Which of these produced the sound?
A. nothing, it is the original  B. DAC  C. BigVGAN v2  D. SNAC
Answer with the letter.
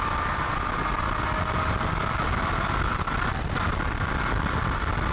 A